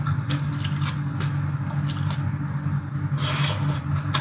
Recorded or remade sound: recorded